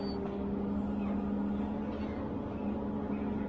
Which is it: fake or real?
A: real